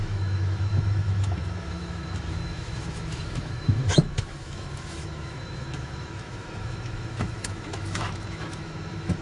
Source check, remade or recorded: remade